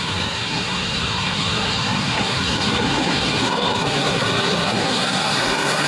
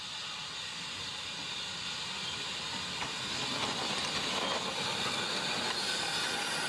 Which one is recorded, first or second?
second